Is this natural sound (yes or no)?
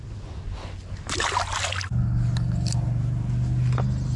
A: yes